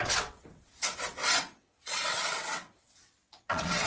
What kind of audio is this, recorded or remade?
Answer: remade